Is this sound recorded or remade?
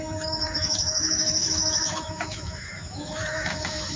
remade